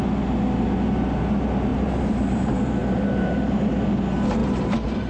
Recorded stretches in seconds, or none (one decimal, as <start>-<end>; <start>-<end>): 0.0-1.7; 2.4-2.8; 3.7-4.4